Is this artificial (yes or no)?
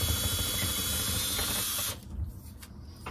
no